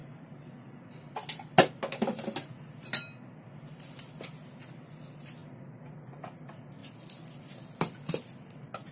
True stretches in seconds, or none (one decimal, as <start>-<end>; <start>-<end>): 0.0-8.9